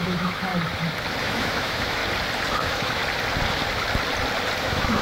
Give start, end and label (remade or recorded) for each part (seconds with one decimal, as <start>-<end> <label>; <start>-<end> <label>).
0.0-0.5 remade; 0.5-1.2 recorded; 1.2-2.0 remade; 2.0-2.5 recorded; 2.5-3.0 remade; 3.0-4.6 recorded; 4.6-5.0 remade

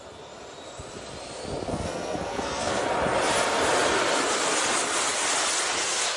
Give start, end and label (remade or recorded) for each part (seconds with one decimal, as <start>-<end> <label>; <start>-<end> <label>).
0.0-1.7 recorded; 1.7-2.9 remade; 2.9-6.2 recorded

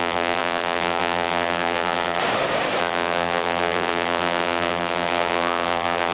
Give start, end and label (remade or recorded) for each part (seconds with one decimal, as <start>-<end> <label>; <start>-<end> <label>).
0.0-2.2 remade; 2.2-2.8 recorded; 2.8-6.1 remade

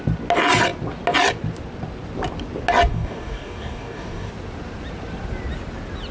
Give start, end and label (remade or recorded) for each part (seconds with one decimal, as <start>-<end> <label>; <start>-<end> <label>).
0.0-2.9 recorded; 2.9-4.3 remade; 4.3-6.1 recorded

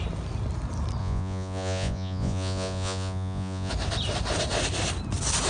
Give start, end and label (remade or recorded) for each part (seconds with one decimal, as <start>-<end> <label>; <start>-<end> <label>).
0.0-1.0 recorded; 1.0-3.7 remade; 3.7-5.5 recorded

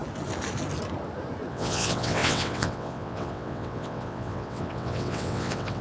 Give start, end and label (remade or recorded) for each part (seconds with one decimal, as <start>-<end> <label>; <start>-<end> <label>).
0.0-1.5 recorded; 1.5-5.8 remade

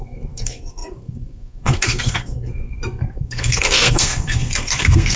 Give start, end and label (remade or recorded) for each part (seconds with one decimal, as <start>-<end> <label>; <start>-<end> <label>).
0.0-5.2 remade

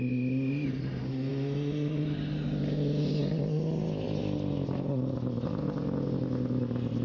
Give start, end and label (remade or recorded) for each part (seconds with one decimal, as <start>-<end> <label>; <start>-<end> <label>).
0.0-7.0 recorded